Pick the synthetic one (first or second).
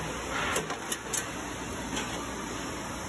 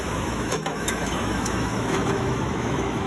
second